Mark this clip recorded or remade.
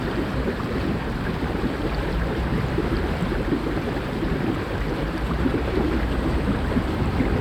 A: remade